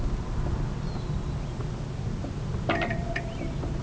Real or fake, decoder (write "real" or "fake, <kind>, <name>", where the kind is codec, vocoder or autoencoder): real